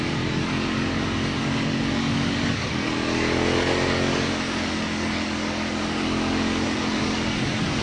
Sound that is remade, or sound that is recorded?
remade